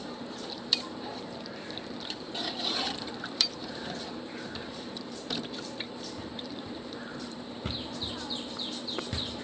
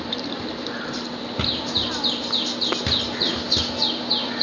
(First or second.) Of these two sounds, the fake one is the first